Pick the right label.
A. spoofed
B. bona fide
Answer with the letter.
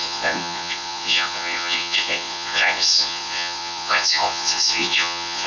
A